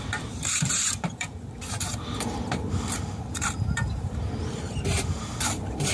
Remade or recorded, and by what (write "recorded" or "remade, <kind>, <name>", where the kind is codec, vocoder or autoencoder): remade, vocoder, BigVGAN v2